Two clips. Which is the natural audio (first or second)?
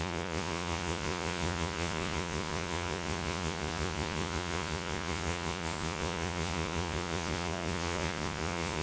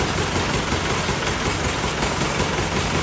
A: second